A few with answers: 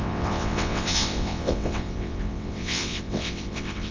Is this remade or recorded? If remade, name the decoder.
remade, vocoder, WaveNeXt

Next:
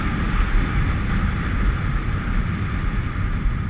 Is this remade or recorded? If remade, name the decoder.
recorded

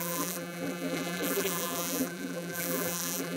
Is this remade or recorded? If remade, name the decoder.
remade, vocoder, BigVGAN v2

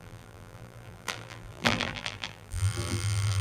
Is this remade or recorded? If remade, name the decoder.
remade, vocoder, BigVGAN v2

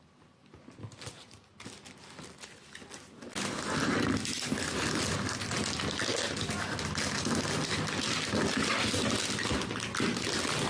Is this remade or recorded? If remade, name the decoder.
recorded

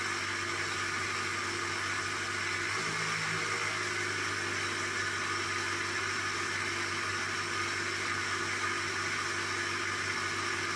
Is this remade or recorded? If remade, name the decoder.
recorded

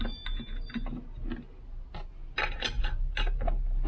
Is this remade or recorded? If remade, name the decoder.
recorded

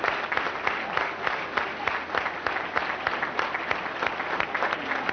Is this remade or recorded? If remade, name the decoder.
recorded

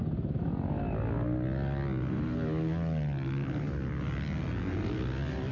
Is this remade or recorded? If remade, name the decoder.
recorded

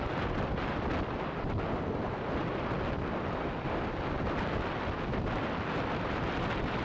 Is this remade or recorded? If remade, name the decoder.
recorded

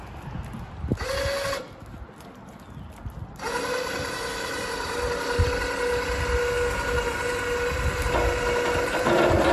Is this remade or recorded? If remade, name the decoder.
recorded